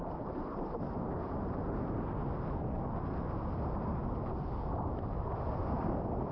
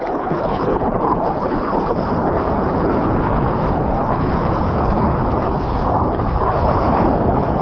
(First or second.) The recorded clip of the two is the first